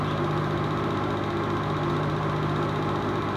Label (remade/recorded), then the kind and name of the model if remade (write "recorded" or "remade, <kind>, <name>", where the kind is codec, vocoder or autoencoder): recorded